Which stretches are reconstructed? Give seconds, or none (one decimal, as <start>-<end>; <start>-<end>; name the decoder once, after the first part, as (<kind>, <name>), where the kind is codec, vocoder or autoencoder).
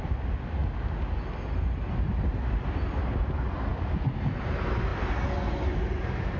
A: none